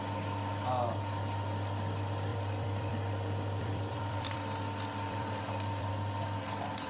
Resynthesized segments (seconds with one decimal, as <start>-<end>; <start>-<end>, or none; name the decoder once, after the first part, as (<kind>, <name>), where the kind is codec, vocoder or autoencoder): 2.3-5.9 (vocoder, BigVGAN v2)